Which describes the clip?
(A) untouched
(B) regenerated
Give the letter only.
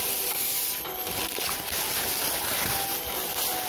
A